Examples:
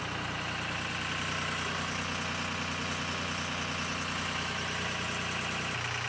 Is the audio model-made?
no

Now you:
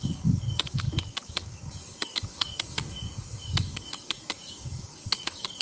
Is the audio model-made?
yes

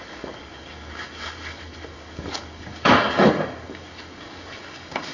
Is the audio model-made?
yes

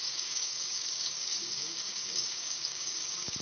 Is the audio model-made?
yes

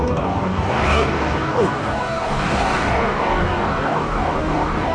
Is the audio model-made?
yes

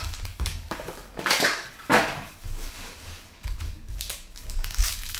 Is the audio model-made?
yes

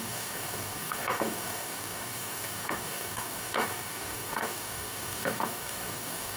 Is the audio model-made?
yes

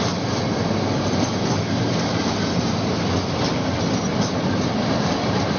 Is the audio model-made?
no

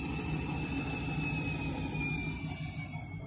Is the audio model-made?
no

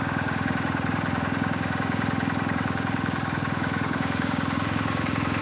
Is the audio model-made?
yes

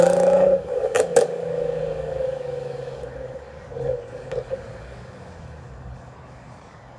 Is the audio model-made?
yes